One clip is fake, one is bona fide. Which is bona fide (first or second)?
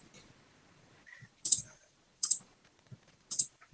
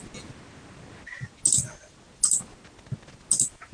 second